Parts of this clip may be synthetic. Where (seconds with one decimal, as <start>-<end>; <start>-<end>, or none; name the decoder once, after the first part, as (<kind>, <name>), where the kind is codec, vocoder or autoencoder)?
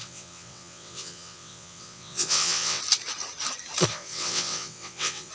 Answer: 0.0-2.8 (vocoder, WaveNeXt); 3.9-5.3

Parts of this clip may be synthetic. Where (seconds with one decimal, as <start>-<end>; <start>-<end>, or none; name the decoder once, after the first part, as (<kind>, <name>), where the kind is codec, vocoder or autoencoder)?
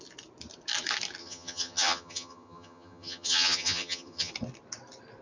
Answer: 1.2-4.3 (vocoder, HiFi-GAN)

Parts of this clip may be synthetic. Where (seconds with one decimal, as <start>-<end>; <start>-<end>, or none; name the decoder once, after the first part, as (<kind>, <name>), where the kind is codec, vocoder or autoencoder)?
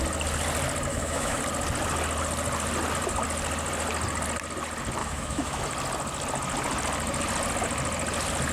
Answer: 0.9-1.4 (autoencoder, DAC-VAE); 5.0-5.6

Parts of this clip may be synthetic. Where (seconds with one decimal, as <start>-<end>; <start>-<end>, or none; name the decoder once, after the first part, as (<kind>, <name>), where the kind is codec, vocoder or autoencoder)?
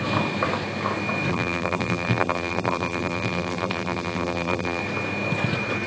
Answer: 1.3-4.8 (vocoder, BigVGAN v2)